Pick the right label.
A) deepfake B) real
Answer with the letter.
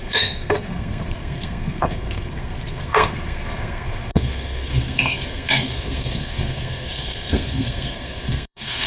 A